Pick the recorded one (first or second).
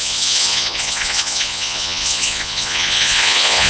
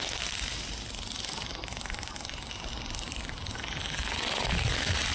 second